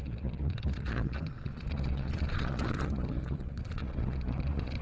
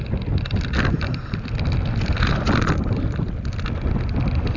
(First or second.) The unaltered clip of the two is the second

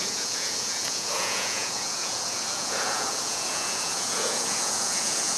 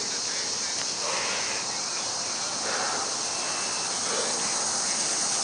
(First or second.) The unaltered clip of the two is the second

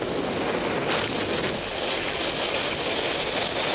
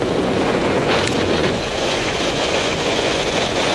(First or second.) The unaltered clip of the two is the first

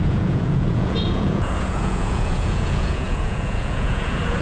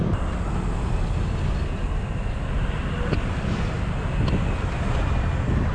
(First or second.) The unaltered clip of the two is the second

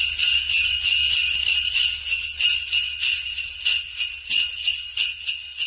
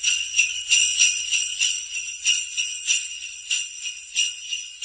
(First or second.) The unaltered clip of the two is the first